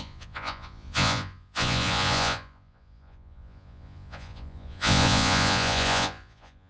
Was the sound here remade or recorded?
remade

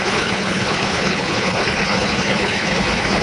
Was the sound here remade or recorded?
remade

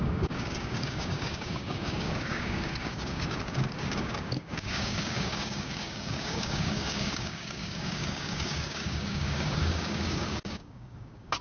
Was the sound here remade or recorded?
remade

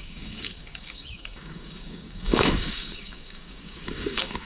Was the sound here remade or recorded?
remade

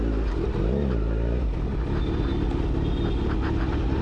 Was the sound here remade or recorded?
recorded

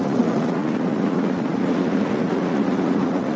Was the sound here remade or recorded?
remade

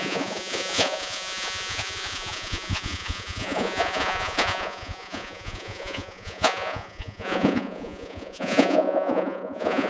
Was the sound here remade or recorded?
remade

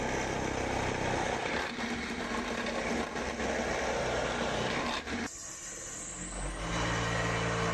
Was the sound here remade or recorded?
recorded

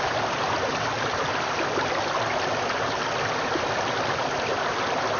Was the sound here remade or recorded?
recorded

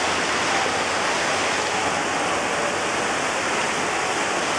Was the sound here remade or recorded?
recorded